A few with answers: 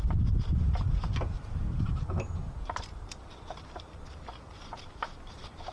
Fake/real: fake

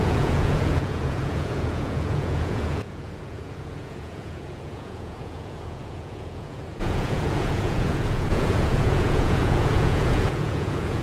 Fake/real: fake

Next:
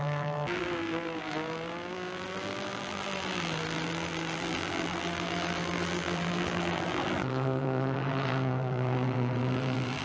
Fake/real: fake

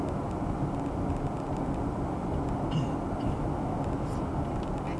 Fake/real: real